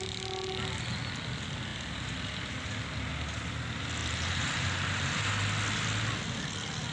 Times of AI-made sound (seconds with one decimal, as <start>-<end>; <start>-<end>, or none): 4.0-5.3